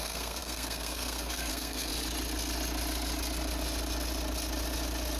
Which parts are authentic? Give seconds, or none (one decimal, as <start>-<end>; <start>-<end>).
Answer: 1.9-5.2